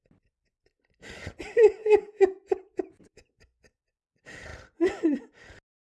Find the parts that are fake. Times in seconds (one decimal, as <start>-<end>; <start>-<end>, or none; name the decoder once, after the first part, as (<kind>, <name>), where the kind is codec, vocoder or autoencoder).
1.8-3.3 (vocoder, Vocos)